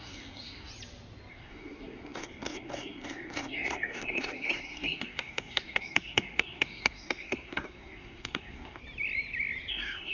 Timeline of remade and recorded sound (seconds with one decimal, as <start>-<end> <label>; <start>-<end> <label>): 0.0-0.7 remade; 0.7-1.3 recorded; 1.3-8.8 remade; 8.8-9.7 recorded; 9.7-10.1 remade